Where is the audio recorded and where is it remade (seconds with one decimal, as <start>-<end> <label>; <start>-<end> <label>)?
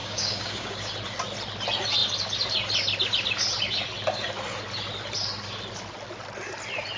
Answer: 0.0-0.9 remade; 0.9-7.0 recorded